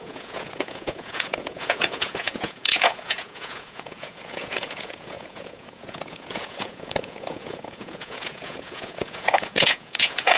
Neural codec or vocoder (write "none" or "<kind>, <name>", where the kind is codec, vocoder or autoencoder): vocoder, Vocos